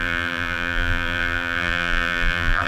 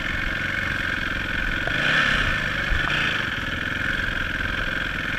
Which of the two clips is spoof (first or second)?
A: first